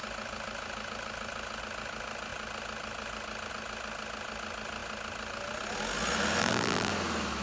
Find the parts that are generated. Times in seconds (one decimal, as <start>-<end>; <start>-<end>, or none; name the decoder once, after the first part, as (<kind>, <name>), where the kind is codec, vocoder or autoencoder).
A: 6.4-6.9 (vocoder, BigVGAN v2)